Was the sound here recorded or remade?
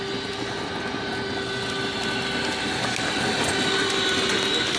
recorded